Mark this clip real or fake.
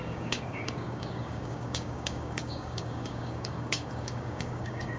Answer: fake